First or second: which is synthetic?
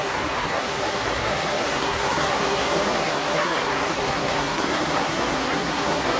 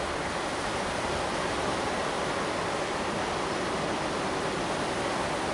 first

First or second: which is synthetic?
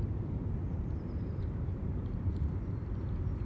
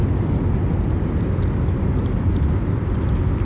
first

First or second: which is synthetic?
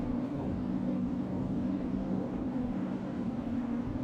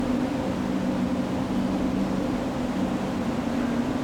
first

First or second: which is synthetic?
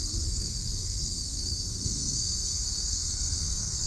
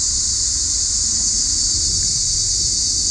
first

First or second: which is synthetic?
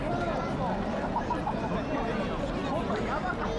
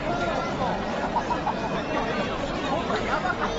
second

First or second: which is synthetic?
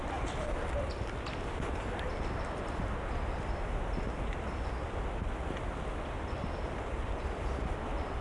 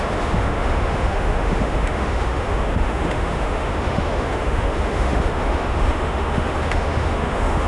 second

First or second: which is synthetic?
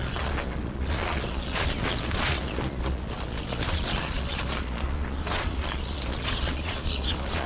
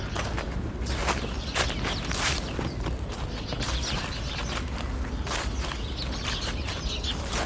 first